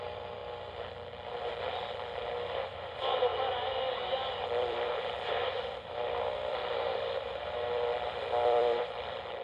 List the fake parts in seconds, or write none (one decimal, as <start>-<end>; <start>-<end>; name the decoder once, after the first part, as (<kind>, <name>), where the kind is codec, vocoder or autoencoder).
0.0-0.4 (vocoder, BigVGAN v2); 1.6-3.3; 4.2-9.4